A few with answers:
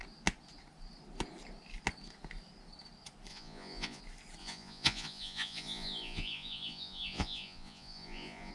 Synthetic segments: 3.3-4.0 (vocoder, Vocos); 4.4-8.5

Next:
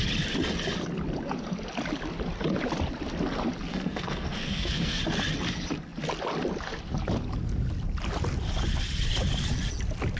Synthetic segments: 3.7-5.0 (codec, SNAC)

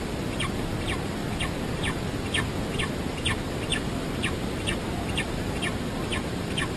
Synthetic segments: 3.7-5.6 (vocoder, BigVGAN v2); 6.1-6.8

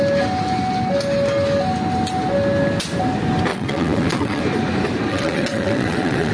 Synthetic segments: 3.5-4.4 (vocoder, WaveNeXt); 5.1-6.3

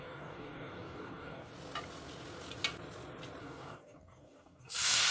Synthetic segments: 0.0-1.5 (codec, DAC); 3.4-5.1

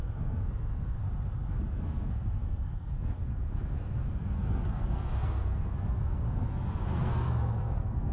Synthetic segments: 0.0-1.0 (codec, SNAC); 1.5-8.1